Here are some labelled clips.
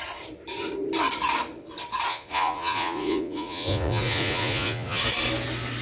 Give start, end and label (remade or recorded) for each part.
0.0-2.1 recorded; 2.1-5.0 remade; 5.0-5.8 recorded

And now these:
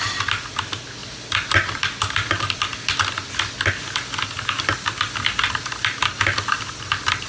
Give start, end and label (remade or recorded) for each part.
0.0-7.3 recorded